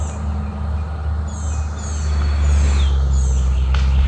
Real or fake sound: real